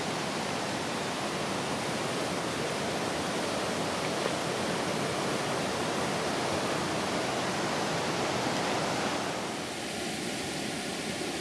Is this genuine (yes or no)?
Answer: yes